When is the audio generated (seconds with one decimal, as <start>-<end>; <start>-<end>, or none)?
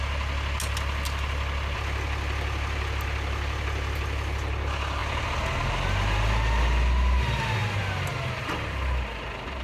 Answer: none